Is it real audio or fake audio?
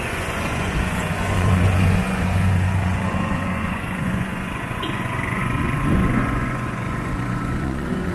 fake